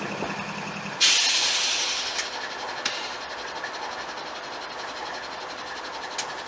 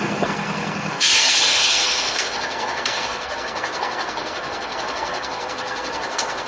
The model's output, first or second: second